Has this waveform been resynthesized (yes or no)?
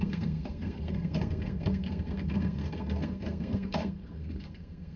yes